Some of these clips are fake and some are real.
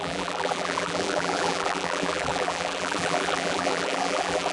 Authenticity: fake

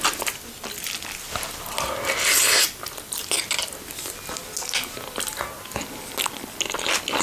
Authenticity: real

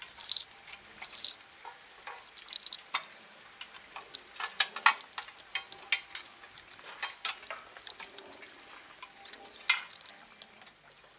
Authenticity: real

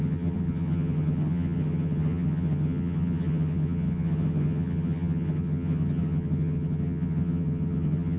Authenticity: fake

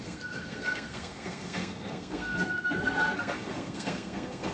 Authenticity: fake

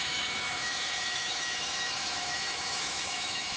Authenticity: fake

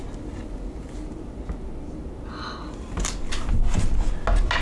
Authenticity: real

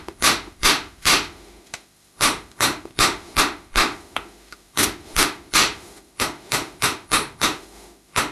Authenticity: fake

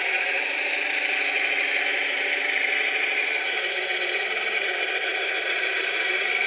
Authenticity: fake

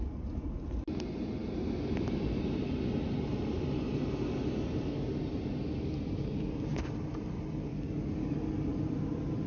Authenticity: real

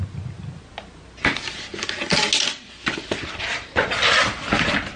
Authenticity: real